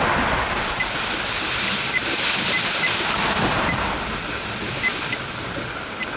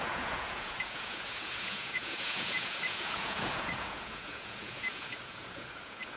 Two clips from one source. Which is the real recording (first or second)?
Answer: first